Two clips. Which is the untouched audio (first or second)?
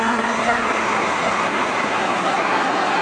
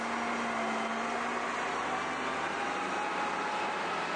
second